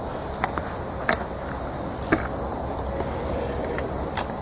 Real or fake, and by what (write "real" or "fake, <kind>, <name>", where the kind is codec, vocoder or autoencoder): real